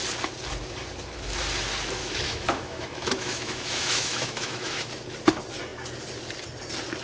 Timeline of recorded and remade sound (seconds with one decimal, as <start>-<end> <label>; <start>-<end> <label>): 0.0-2.0 recorded; 2.0-4.9 remade; 4.9-7.0 recorded